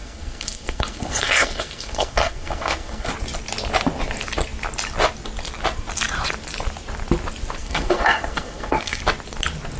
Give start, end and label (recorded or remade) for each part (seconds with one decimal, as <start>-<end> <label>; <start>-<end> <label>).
0.0-3.1 remade; 3.1-7.6 recorded; 7.6-9.0 remade; 9.0-9.8 recorded